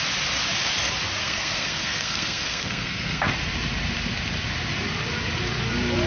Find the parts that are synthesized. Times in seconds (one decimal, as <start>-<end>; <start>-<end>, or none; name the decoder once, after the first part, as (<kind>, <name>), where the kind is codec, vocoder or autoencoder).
1.2-3.3 (codec, SNAC)